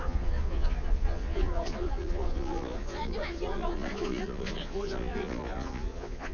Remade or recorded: remade